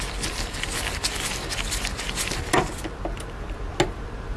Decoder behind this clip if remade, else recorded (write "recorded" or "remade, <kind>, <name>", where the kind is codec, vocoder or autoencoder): recorded